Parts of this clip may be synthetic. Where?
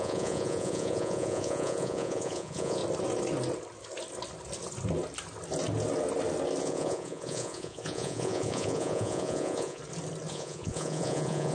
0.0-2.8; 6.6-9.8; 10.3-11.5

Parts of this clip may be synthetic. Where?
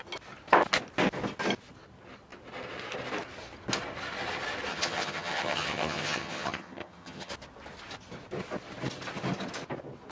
4.7-7.3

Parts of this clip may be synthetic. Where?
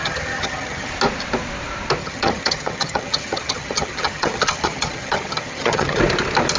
0.0-0.9; 2.0-6.0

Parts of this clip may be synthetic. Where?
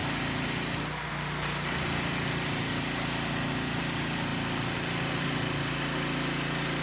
none